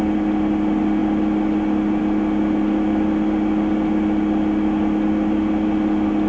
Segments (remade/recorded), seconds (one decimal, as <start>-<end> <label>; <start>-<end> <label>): 0.0-6.3 recorded